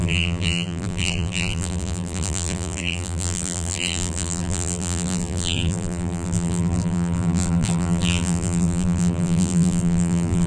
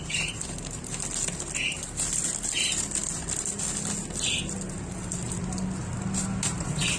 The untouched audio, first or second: second